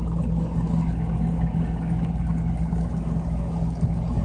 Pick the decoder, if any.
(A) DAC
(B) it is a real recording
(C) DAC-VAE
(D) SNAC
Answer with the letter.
A